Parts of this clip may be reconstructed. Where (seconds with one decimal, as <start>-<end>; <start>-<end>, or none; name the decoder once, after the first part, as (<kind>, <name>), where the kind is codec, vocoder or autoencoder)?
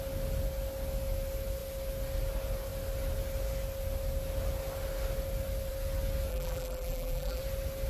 6.3-7.4 (vocoder, BigVGAN v2)